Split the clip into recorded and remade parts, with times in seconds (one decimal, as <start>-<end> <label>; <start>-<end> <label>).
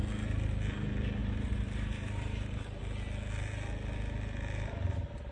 0.0-1.2 recorded; 1.2-2.8 remade; 2.8-5.3 recorded